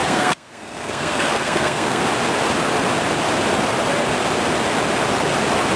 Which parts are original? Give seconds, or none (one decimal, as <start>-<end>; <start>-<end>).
2.0-5.8